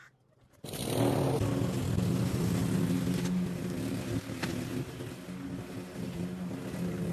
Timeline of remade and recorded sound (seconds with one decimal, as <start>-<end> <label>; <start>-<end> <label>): 0.0-7.1 recorded